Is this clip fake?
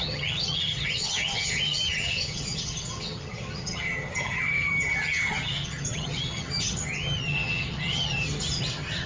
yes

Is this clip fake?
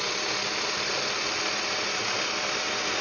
no